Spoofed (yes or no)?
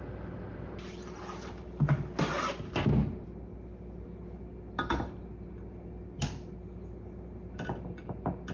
no